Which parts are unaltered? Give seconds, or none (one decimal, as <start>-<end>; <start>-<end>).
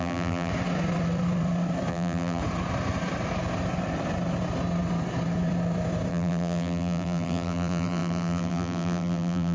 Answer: 0.5-1.9; 2.4-6.1